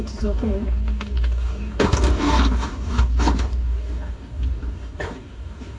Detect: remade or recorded remade